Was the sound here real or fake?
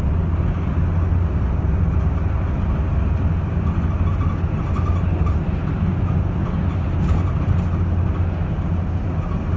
real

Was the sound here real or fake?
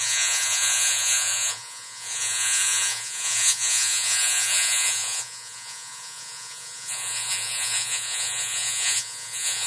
fake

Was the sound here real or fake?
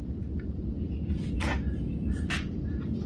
fake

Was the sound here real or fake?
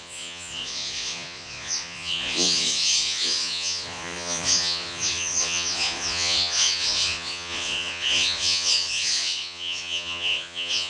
fake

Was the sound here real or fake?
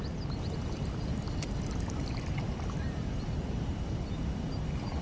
real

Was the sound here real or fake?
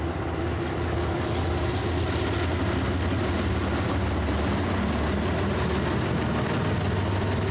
real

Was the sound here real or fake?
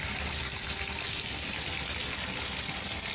real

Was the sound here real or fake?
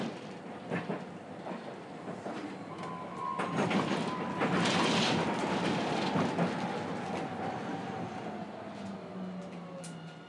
real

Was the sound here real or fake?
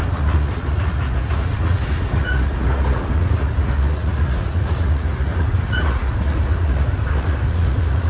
fake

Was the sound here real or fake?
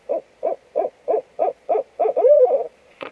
fake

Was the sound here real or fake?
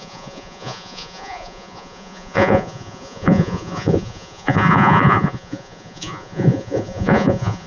fake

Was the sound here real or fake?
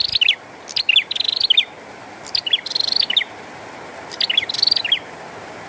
real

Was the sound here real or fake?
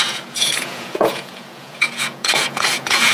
fake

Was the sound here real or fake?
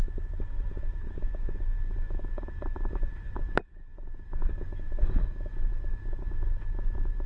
real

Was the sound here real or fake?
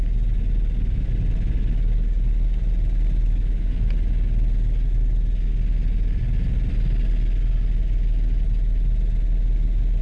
real